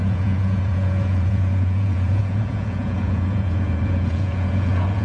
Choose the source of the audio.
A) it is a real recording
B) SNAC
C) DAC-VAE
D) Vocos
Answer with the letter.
D